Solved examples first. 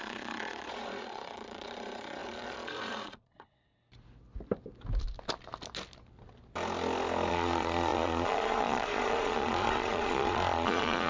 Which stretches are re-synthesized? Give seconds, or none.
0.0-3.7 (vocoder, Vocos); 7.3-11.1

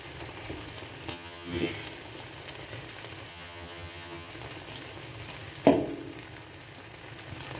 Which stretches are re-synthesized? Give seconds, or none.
1.1-1.7 (vocoder, HiFi-GAN); 3.3-4.3

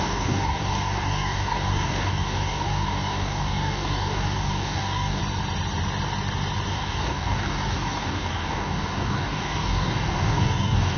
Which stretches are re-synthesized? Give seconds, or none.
0.0-5.2 (codec, DAC); 6.7-11.0

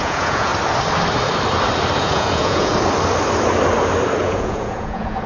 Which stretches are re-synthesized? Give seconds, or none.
0.0-0.5 (vocoder, Vocos); 2.0-2.7; 4.2-5.3

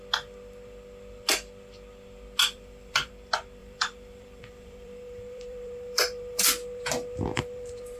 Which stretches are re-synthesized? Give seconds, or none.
2.4-3.1 (vocoder, BigVGAN v2); 3.6-8.0

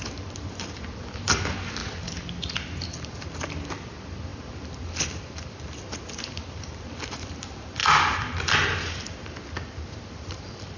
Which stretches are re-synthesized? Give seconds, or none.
none

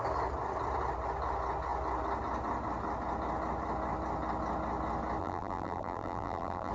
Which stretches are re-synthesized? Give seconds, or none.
5.2-6.7 (vocoder, BigVGAN v2)

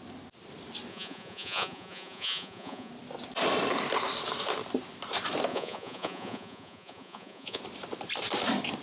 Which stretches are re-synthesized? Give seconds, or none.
0.9-2.9 (vocoder, Vocos); 5.5-7.6